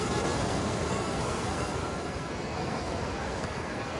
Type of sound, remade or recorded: remade